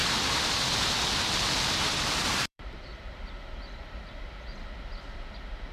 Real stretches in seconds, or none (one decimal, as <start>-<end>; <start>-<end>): 0.0-1.9; 2.9-5.7